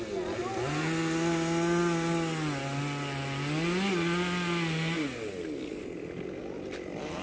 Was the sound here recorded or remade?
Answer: recorded